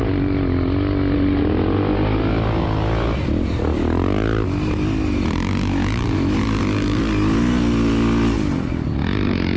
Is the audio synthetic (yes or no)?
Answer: no